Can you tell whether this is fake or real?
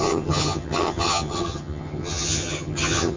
fake